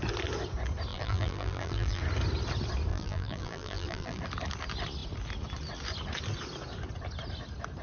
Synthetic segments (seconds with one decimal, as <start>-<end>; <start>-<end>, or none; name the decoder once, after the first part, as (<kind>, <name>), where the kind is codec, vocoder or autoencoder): 0.9-2.0 (vocoder, BigVGAN v2); 2.9-4.2